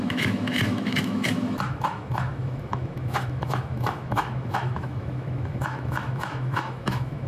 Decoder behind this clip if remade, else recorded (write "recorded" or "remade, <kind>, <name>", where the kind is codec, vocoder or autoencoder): remade, autoencoder, DAC-VAE